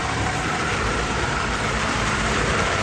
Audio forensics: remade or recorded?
remade